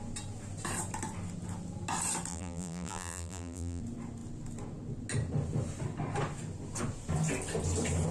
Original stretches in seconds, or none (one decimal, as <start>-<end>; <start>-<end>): 0.0-2.3; 3.8-8.1